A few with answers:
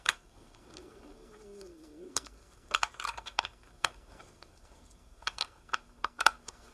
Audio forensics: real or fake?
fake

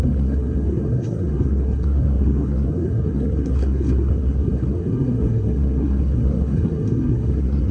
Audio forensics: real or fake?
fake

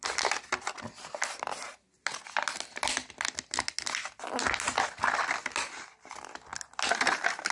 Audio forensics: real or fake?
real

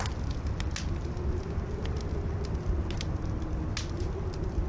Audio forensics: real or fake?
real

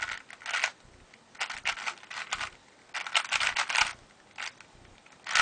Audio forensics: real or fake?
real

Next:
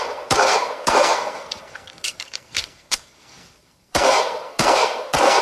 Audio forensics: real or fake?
fake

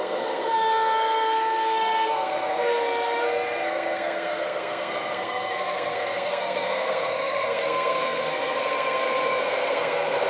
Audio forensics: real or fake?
fake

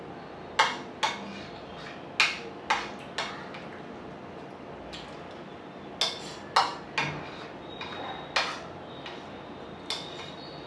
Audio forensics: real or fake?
real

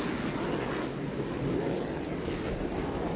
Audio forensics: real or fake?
real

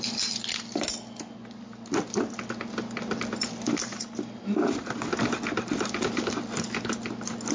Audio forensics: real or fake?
real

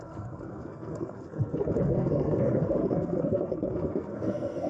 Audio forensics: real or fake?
fake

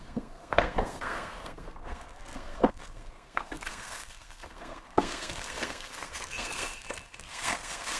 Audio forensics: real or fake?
fake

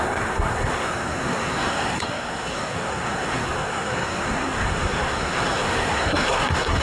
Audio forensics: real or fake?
fake